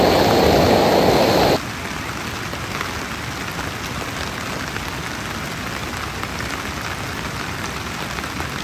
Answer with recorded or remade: recorded